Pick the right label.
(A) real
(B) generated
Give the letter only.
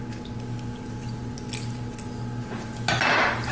A